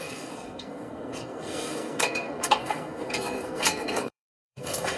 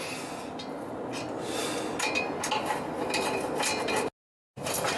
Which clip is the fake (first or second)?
first